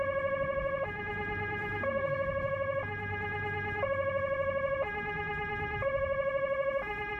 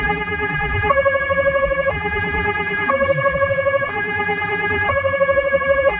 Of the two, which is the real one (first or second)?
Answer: first